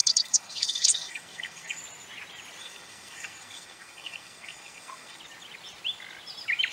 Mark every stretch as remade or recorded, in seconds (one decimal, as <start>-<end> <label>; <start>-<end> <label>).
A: 0.0-1.8 remade; 1.8-2.6 recorded; 2.6-5.2 remade; 5.2-6.7 recorded